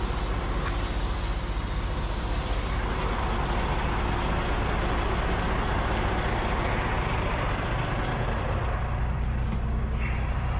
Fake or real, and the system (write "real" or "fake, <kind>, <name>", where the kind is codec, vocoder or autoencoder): real